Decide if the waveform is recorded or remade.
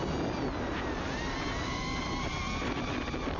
recorded